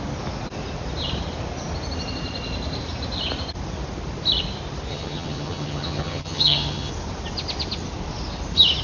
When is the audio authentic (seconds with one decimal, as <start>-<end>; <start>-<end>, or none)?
0.0-4.9; 6.9-8.8